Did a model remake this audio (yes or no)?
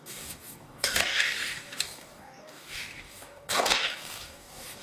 yes